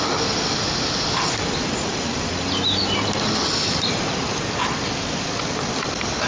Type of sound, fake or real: real